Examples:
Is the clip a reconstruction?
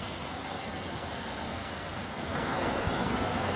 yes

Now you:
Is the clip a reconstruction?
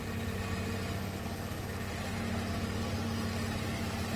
no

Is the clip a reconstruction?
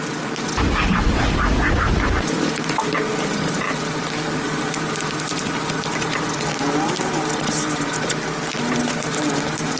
no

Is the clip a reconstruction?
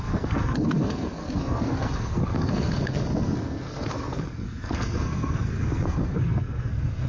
yes